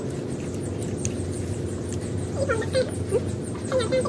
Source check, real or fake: real